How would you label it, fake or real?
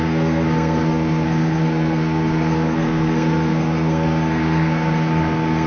fake